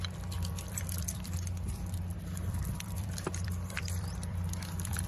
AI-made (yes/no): yes